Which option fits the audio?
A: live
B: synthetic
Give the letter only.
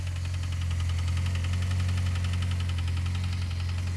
A